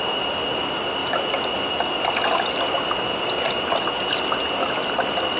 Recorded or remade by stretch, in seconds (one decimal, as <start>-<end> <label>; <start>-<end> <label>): 0.0-5.4 recorded